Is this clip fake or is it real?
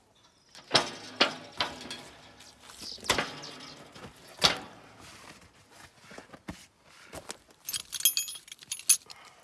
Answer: real